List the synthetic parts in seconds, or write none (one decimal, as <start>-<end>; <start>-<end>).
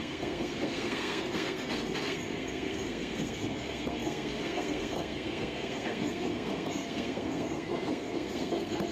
0.0-8.9